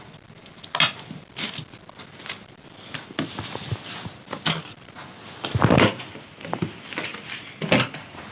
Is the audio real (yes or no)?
yes